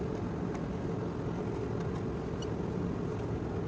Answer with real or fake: real